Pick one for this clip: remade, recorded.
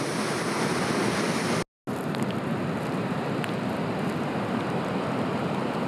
recorded